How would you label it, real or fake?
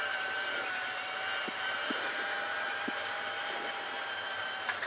fake